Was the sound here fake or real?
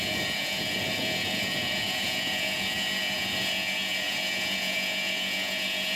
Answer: fake